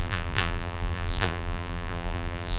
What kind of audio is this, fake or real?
fake